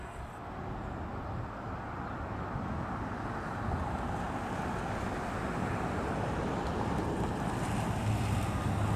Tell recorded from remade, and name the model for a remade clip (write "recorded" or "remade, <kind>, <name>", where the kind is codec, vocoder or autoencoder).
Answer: recorded